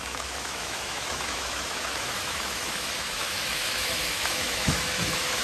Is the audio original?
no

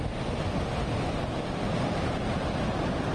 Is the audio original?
yes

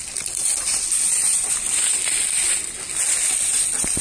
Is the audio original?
yes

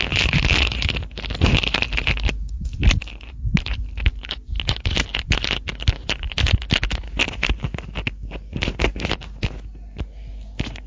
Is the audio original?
yes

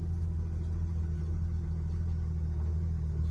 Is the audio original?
yes